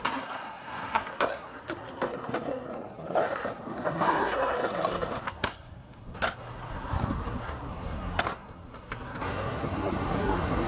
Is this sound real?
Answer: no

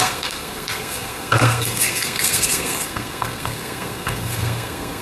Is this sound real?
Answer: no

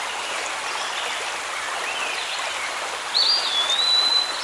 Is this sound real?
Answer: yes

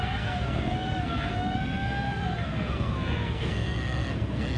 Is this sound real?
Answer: no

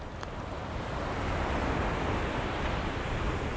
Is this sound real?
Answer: yes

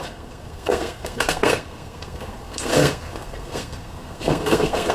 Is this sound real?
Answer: no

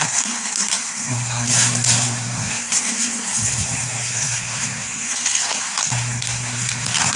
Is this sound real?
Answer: no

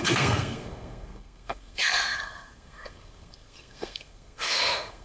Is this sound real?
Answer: no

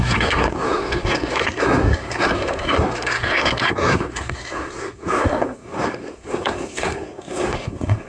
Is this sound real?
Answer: no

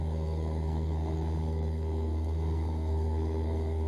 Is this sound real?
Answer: no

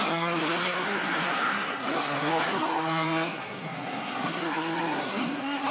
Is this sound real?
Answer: no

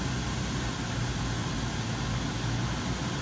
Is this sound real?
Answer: yes